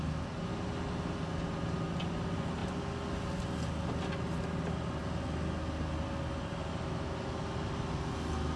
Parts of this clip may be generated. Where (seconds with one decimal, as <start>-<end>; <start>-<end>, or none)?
none